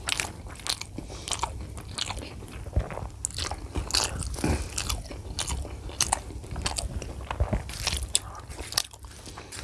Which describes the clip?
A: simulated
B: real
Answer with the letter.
B